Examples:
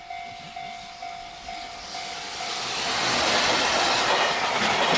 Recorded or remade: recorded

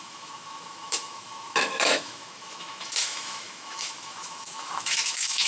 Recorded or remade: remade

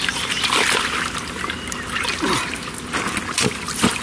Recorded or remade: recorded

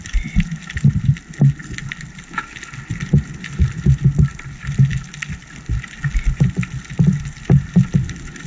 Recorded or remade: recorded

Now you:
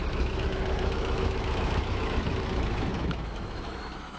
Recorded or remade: remade